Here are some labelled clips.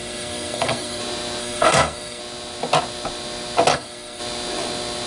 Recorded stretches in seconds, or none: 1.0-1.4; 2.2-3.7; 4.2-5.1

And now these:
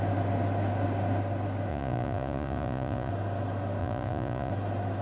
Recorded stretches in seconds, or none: 0.0-1.7; 3.1-3.8; 4.5-5.0

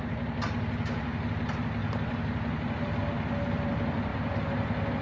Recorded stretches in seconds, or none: 0.0-5.0

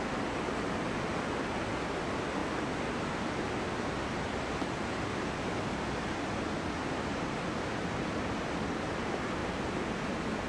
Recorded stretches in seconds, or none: 0.0-10.5

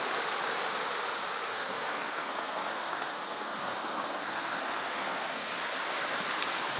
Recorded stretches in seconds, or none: 0.0-1.4; 5.5-6.8

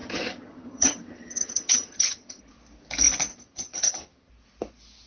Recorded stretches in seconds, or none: 2.4-3.3; 4.3-5.1